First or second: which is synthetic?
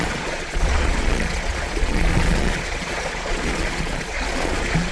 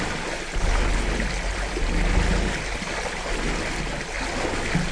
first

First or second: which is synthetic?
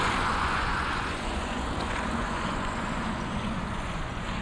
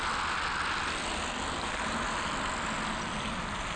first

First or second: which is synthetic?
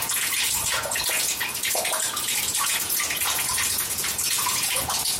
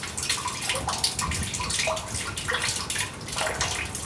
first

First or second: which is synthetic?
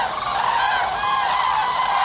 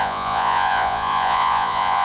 second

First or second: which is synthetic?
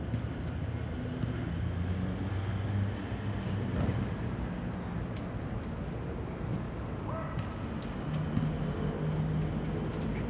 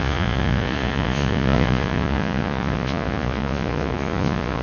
second